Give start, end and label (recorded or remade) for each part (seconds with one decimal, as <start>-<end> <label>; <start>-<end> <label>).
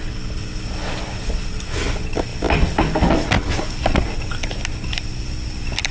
0.0-5.9 recorded